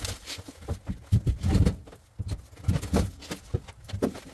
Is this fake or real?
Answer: real